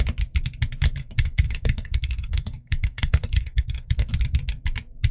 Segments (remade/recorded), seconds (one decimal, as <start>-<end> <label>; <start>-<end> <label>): 0.0-1.0 recorded; 1.0-4.1 remade; 4.1-5.1 recorded